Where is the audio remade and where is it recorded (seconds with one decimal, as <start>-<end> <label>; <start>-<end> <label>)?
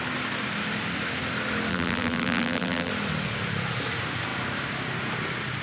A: 0.0-1.7 recorded; 1.7-2.9 remade; 2.9-5.6 recorded